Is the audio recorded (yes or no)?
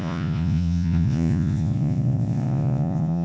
no